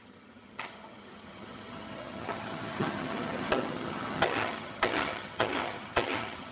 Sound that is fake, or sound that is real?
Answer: fake